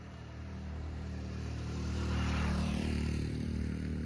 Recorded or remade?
remade